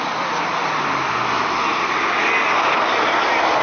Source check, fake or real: real